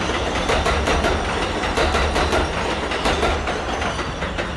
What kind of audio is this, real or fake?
real